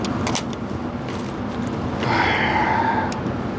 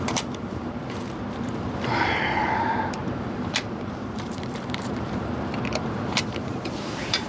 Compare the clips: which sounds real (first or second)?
first